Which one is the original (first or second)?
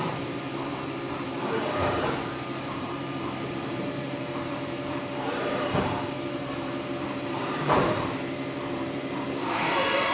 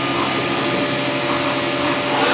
second